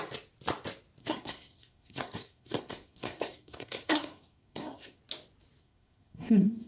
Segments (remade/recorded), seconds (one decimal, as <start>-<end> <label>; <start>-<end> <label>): 0.0-1.0 recorded; 1.0-5.0 remade; 5.0-5.6 recorded; 5.6-6.7 remade